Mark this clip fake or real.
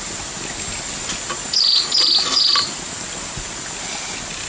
real